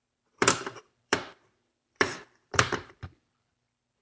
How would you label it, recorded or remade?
remade